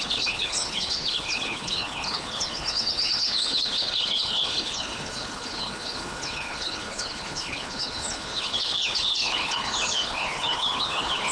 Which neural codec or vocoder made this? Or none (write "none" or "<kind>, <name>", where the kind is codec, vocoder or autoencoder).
codec, HILCodec